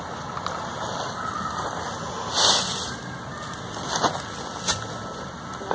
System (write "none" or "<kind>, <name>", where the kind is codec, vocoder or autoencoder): none